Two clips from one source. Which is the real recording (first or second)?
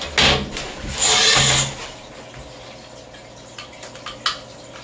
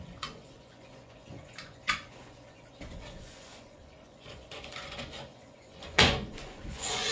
first